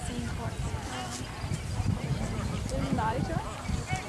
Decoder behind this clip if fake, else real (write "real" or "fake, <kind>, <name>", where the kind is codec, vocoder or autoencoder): real